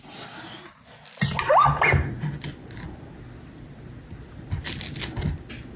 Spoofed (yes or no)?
no